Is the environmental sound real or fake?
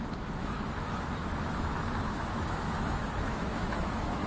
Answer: fake